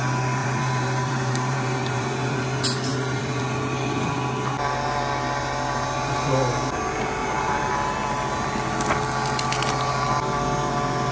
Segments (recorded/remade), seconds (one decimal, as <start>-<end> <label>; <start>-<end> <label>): 0.0-0.4 recorded; 0.4-2.4 remade; 2.4-2.9 recorded; 2.9-3.4 remade; 3.4-7.2 recorded; 7.2-7.7 remade; 7.7-11.1 recorded